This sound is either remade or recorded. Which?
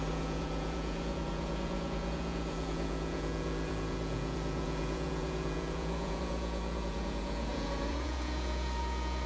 remade